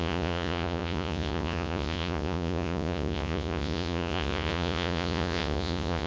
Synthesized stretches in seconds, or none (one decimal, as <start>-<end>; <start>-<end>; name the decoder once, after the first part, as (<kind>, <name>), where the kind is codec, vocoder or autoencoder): 0.0-6.1 (vocoder, Vocos)